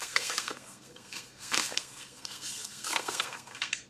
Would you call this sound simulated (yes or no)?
yes